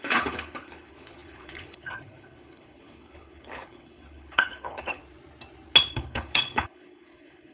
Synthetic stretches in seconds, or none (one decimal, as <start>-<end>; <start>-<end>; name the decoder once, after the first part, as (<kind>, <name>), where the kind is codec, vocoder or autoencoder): 0.0-5.0 (codec, HILCodec); 5.9-7.5